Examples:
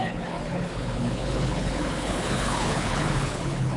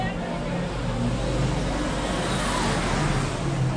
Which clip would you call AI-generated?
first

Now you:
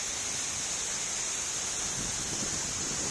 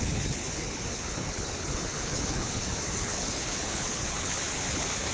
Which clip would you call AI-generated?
second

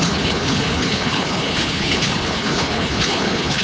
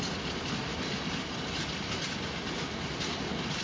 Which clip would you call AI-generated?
first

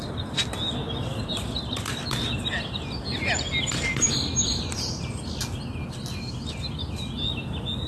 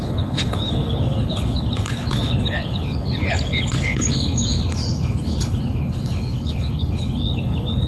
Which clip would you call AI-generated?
second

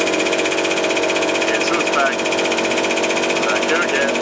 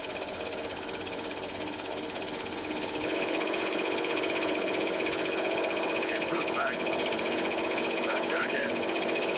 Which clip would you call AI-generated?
second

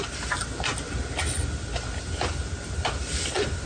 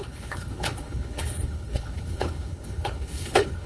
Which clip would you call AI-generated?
second